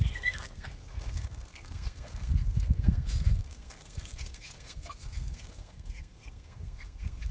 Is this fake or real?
fake